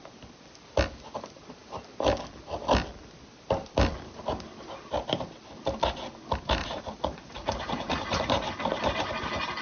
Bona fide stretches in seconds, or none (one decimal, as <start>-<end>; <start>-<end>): 0.0-6.6; 8.3-9.6